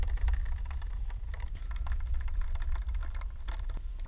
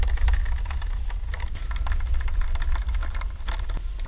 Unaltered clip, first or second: second